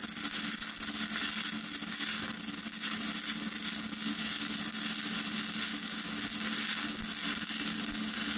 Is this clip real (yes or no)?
yes